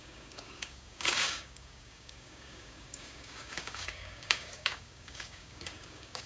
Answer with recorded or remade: remade